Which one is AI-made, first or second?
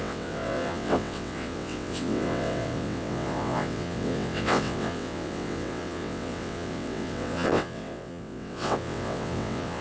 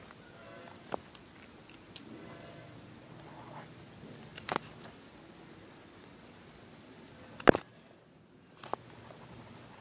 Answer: first